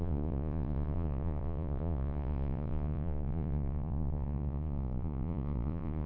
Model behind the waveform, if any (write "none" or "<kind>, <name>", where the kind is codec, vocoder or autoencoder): vocoder, Vocos